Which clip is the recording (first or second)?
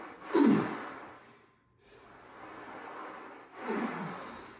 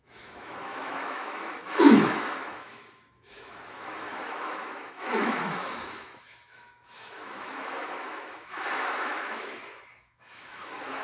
first